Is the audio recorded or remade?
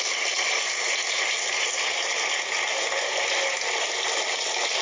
recorded